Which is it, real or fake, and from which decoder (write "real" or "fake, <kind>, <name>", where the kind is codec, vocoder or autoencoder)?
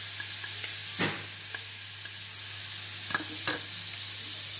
real